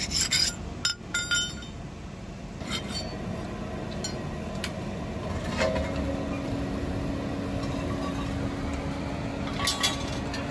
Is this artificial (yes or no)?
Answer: no